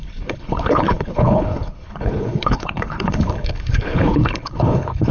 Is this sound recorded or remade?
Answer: remade